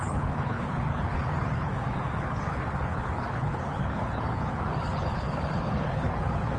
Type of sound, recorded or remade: remade